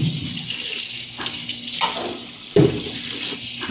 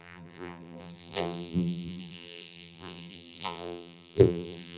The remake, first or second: second